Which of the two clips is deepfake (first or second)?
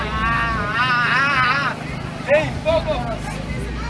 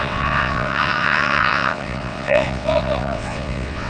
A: second